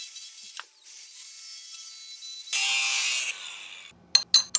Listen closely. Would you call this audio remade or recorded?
recorded